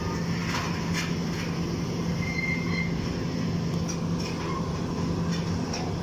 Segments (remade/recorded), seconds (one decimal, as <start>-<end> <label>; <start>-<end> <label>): 0.0-6.0 recorded